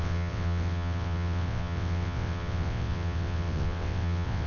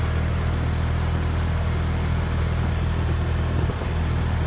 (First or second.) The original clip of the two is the second